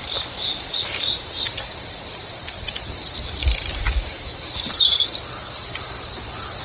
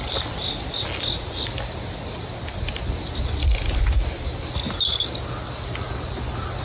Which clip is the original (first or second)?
second